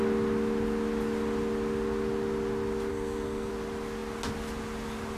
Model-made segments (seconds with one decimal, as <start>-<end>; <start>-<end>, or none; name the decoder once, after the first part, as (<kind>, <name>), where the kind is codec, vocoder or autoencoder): 2.9-3.5 (codec, SNAC)